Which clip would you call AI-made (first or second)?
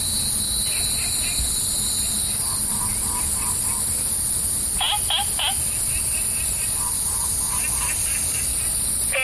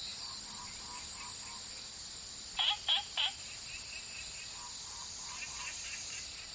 second